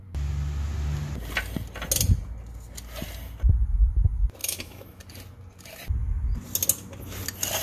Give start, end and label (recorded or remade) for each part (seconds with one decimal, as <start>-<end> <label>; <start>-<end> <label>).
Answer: 0.0-4.4 recorded; 4.4-5.0 remade; 5.0-7.6 recorded